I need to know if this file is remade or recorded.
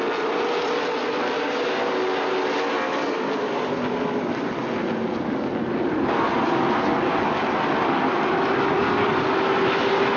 recorded